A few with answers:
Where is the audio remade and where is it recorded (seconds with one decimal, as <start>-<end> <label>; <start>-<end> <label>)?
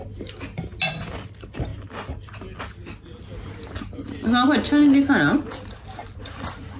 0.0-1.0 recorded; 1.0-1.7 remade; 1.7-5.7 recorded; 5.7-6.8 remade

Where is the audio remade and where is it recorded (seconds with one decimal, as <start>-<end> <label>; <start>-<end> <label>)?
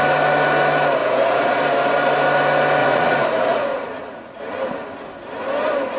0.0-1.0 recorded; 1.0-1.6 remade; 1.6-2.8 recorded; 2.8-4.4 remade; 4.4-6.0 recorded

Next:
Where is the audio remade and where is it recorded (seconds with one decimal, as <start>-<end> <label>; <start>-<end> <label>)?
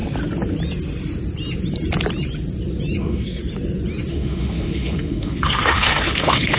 0.0-3.0 recorded; 3.0-3.4 remade; 3.4-4.1 recorded; 4.1-6.6 remade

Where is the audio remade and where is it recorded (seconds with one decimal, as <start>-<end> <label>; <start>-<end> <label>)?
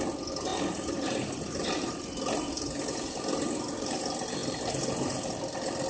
0.0-0.5 recorded; 0.5-4.0 remade; 4.0-4.4 recorded; 4.4-5.3 remade; 5.3-5.9 recorded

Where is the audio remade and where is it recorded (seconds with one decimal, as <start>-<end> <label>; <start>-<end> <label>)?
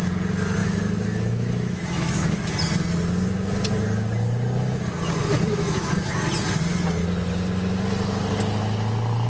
0.0-0.6 recorded; 0.6-2.5 remade; 2.5-5.2 recorded; 5.2-5.9 remade; 5.9-9.3 recorded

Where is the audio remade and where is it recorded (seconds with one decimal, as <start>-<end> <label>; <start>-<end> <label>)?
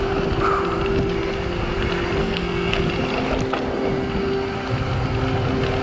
0.0-2.2 recorded; 2.2-2.8 remade; 2.8-5.8 recorded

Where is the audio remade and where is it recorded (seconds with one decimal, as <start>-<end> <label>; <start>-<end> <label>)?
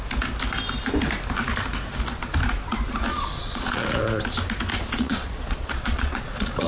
0.0-3.1 recorded; 3.1-4.2 remade; 4.2-4.7 recorded; 4.7-6.7 remade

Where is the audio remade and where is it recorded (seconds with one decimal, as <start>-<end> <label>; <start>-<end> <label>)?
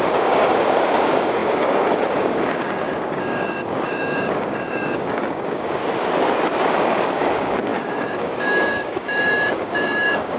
0.0-5.8 remade; 5.8-6.7 recorded; 6.7-10.4 remade